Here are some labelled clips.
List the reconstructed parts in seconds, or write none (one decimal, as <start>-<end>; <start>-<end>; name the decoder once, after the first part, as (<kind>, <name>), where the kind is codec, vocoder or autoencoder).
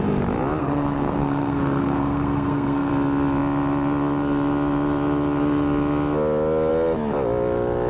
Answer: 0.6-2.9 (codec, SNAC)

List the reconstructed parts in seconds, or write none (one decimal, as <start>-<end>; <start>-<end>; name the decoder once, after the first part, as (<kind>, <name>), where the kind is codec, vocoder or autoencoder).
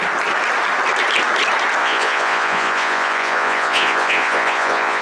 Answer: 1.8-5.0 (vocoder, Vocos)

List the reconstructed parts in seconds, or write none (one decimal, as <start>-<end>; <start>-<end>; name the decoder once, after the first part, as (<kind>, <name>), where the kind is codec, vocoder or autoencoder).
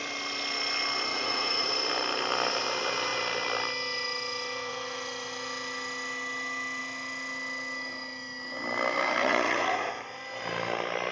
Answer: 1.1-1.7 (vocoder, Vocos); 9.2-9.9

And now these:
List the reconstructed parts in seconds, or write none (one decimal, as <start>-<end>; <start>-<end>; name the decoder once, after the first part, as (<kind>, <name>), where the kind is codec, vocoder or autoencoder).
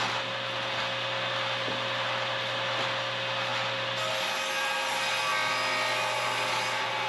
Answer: none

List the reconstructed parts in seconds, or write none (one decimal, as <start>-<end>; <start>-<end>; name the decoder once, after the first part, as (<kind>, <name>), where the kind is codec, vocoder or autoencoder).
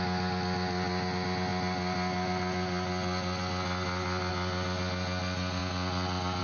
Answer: none